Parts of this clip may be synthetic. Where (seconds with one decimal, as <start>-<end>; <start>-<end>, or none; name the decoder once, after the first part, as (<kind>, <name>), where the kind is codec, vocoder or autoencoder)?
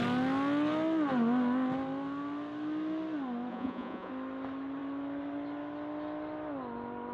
3.5-4.1 (vocoder, Vocos)